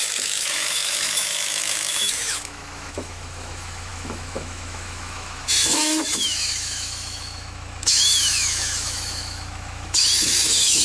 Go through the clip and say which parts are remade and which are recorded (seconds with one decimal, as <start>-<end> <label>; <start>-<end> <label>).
0.0-10.8 remade